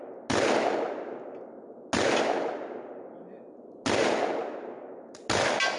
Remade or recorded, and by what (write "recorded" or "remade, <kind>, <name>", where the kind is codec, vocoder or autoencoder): recorded